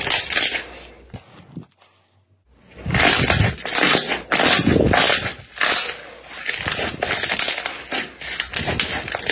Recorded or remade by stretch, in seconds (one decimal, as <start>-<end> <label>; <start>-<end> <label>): 0.0-9.3 recorded